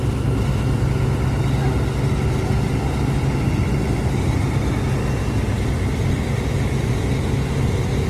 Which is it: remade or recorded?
recorded